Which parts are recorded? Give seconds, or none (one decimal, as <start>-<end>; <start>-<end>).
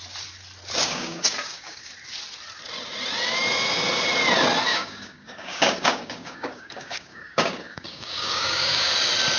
0.0-0.8; 1.9-4.7; 8.9-9.4